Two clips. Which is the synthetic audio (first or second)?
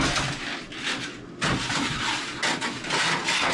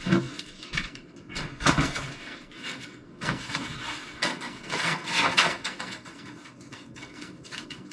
second